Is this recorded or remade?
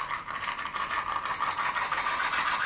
recorded